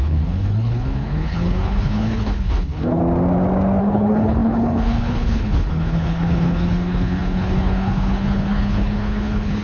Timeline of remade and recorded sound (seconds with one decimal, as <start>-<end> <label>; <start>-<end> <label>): 0.0-3.0 remade; 3.0-3.8 recorded; 3.8-9.6 remade